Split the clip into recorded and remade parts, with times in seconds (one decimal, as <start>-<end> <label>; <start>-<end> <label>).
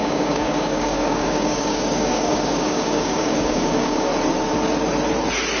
0.0-4.1 remade; 4.1-5.6 recorded